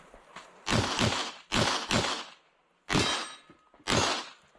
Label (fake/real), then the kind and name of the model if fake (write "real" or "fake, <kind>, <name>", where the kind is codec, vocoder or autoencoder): real